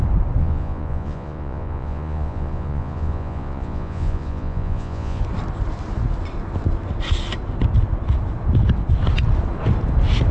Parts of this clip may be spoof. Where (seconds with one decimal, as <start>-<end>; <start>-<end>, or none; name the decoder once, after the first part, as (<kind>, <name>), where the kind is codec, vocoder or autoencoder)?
0.4-5.2 (vocoder, Vocos)